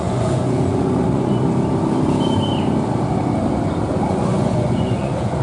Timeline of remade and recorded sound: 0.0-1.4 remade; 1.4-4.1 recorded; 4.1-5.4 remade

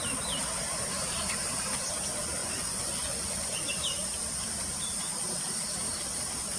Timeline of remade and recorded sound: 0.0-2.4 recorded; 2.4-3.7 remade; 3.7-6.6 recorded

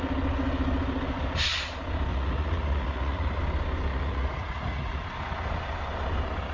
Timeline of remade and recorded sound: 0.0-2.1 recorded; 2.1-3.4 remade; 3.4-3.9 recorded; 3.9-5.1 remade; 5.1-6.5 recorded

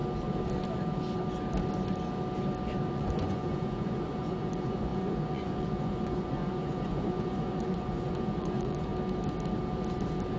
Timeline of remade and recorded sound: 0.0-2.9 recorded; 2.9-8.9 remade; 8.9-10.4 recorded

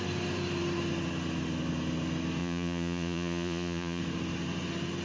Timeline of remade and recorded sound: 0.0-2.4 recorded; 2.4-4.0 remade; 4.0-5.0 recorded

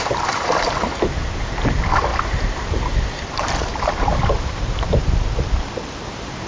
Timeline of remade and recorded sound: 0.0-6.5 recorded

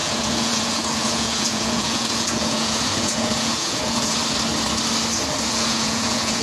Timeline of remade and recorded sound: 0.0-4.2 remade; 4.2-5.5 recorded; 5.5-6.4 remade

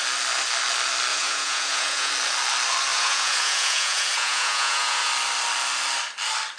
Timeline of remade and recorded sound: 0.0-1.1 recorded; 1.1-2.1 remade; 2.1-2.9 recorded; 2.9-5.1 remade; 5.1-6.6 recorded